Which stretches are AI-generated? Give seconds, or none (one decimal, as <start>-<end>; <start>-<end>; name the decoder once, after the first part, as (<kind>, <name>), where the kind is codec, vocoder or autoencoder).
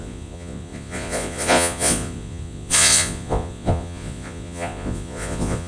0.0-5.7 (vocoder, Vocos)